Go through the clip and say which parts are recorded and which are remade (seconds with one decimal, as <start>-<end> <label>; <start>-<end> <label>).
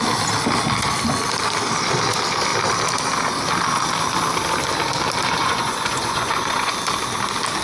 0.0-5.4 recorded; 5.4-6.7 remade; 6.7-7.6 recorded